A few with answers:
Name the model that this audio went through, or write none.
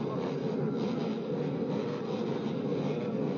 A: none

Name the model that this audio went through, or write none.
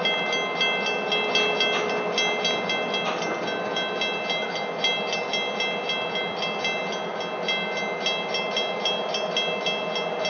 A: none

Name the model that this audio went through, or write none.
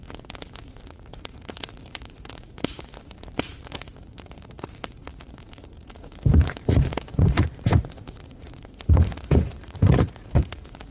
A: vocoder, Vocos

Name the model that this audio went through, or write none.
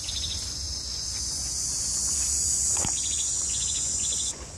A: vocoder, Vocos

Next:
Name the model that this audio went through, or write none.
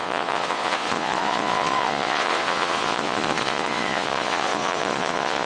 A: vocoder, Vocos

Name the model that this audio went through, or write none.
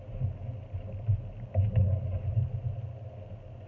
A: none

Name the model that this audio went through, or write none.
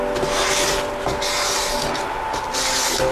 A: none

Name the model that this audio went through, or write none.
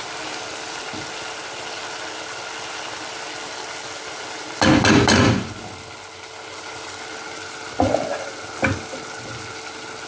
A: none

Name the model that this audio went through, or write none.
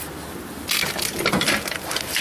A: none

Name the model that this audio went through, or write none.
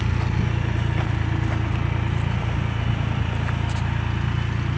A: none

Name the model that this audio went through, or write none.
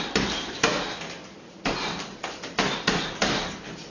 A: none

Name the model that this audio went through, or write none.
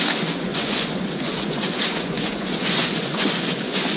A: vocoder, Vocos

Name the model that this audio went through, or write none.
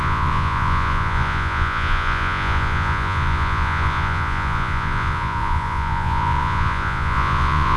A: vocoder, Vocos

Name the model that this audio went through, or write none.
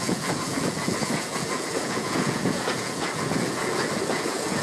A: vocoder, Vocos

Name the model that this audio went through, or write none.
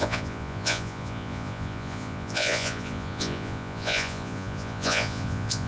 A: vocoder, Vocos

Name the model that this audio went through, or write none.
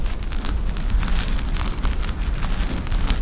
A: none